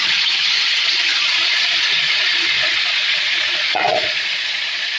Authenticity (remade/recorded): remade